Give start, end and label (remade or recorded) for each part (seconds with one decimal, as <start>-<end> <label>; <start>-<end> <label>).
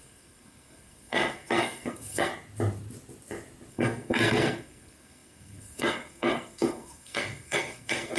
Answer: 0.0-2.3 remade; 2.3-3.7 recorded; 3.7-8.2 remade